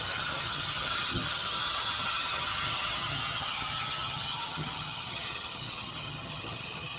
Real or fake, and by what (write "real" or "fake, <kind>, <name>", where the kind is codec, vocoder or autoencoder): fake, vocoder, HiFi-GAN